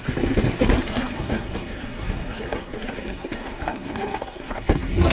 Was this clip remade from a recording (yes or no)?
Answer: yes